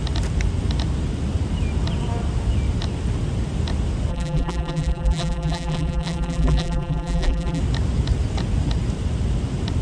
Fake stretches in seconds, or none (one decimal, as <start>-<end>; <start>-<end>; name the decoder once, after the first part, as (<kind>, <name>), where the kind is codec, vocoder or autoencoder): 4.1-7.6 (vocoder, BigVGAN v2)